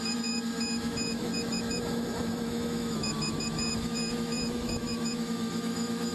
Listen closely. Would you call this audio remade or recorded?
remade